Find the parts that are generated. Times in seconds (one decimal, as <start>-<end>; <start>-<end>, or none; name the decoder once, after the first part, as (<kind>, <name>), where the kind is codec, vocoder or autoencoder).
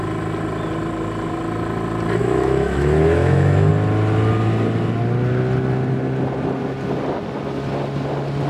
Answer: 2.2-3.7 (autoencoder, DAC-VAE)